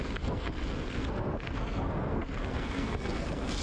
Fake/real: fake